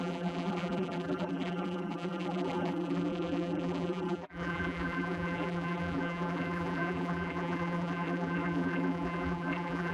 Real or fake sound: fake